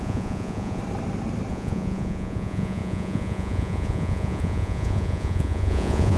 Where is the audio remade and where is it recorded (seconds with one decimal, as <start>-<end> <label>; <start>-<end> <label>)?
0.0-0.8 remade; 0.8-1.5 recorded; 1.5-6.2 remade